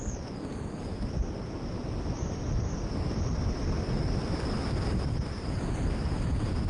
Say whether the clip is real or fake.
real